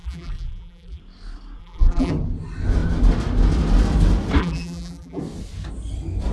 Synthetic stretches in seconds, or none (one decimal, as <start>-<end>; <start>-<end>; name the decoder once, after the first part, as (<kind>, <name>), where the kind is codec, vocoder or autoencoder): 0.0-1.0 (vocoder, BigVGAN v2); 1.6-2.1; 4.4-5.2